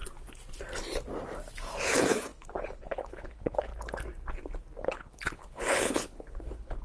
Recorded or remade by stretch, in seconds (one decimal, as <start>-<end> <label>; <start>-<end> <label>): 0.0-1.8 recorded; 1.8-3.7 remade; 3.7-4.8 recorded; 4.8-6.8 remade